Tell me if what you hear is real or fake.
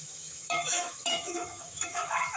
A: fake